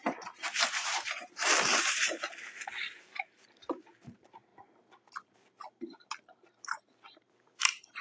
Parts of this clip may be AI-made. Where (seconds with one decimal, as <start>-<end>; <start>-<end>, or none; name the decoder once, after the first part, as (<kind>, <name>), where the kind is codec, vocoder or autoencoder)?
0.0-4.5 (vocoder, BigVGAN v2); 6.2-8.0